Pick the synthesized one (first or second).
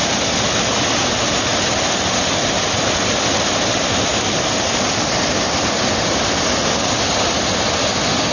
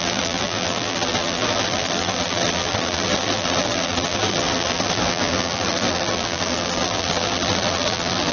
second